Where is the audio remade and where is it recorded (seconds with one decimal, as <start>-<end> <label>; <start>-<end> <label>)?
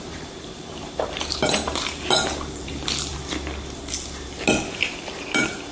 0.0-3.1 remade; 3.1-4.9 recorded; 4.9-5.7 remade